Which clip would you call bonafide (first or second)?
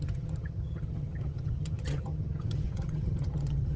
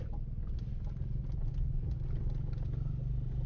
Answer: second